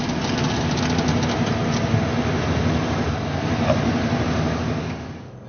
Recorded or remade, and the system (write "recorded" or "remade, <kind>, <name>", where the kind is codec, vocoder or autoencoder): recorded